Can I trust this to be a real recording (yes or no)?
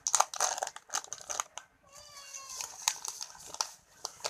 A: yes